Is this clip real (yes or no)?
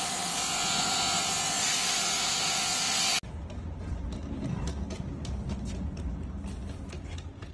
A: yes